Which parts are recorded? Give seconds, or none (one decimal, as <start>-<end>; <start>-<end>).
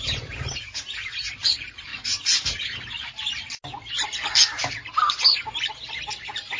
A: 1.9-5.9